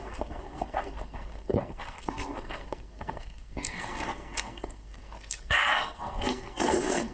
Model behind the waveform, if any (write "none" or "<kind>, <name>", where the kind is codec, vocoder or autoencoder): codec, SNAC